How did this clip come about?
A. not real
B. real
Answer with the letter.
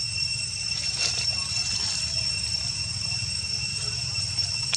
B